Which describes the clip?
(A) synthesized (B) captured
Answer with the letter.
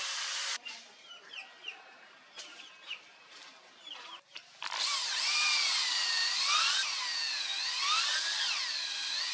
A